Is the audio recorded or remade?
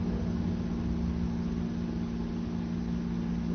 recorded